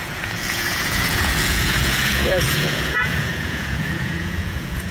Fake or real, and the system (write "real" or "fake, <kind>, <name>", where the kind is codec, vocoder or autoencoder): fake, vocoder, Vocos